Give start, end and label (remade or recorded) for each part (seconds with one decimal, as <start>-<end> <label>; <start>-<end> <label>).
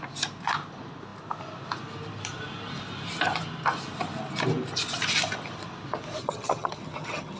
0.0-6.2 recorded; 6.2-7.4 remade